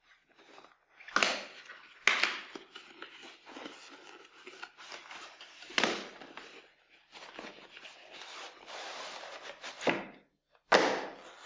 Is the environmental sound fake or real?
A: real